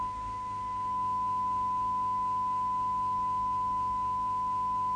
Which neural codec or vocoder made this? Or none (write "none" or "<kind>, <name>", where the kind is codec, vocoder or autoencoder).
autoencoder, DAC-VAE